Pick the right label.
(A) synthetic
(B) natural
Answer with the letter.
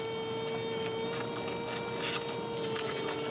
B